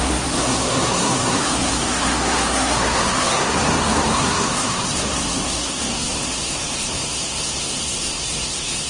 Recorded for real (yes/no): no